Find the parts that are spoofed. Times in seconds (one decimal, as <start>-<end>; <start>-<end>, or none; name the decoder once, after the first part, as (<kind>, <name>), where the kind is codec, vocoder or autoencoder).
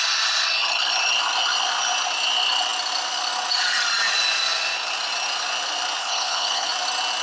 6.0-6.7 (codec, HILCodec)